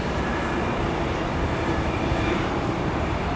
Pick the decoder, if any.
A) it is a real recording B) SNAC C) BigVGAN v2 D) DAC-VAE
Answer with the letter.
C